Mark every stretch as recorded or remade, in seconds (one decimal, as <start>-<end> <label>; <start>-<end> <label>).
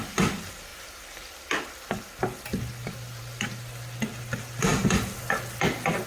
0.0-6.1 recorded